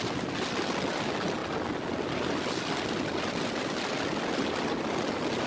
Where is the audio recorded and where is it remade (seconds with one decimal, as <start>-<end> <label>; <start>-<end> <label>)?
0.0-5.5 recorded